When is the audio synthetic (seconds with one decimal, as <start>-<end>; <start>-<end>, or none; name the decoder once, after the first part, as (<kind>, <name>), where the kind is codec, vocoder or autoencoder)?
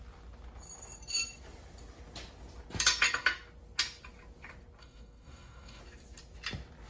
4.8-5.8 (codec, DAC)